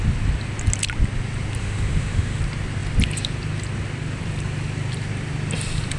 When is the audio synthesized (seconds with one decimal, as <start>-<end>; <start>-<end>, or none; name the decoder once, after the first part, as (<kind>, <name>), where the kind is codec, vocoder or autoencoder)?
1.6-2.4 (autoencoder, DAC-VAE)